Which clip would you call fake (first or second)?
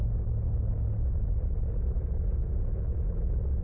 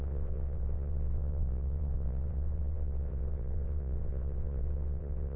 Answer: second